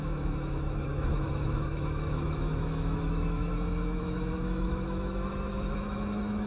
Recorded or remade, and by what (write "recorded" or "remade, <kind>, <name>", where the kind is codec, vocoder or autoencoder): remade, autoencoder, DAC-VAE